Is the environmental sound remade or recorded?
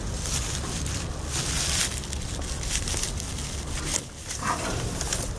recorded